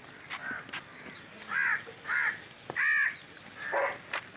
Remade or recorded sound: recorded